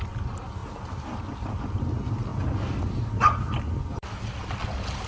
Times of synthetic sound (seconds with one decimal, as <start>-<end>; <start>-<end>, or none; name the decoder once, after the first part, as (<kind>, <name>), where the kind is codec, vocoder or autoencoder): none